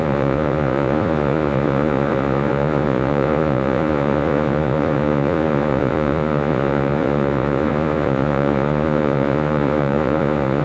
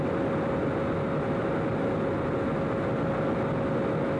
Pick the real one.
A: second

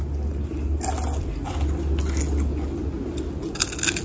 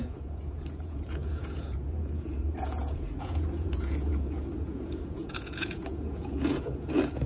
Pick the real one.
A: first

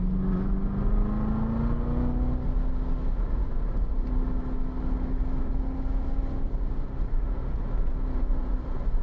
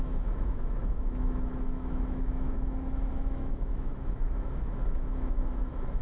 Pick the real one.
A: first